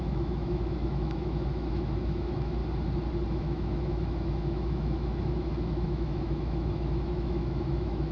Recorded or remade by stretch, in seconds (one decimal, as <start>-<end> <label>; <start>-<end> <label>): 0.0-2.6 remade; 2.6-3.3 recorded; 3.3-8.1 remade